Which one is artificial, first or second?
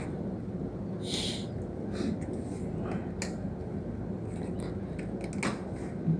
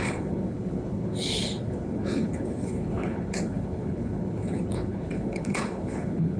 second